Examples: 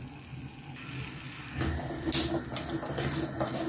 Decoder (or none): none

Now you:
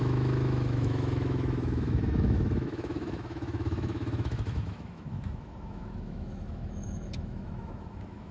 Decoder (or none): autoencoder, DAC-VAE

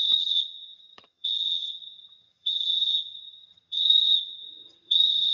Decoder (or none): vocoder, HiFi-GAN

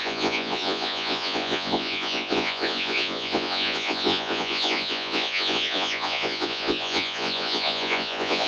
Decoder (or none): vocoder, Vocos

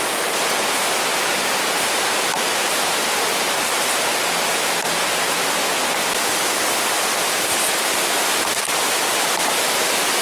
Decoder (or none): none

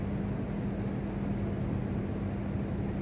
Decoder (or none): none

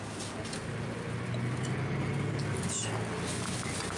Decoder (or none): none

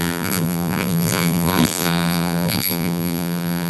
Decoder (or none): vocoder, BigVGAN v2